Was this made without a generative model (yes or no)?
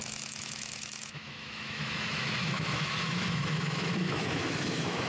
no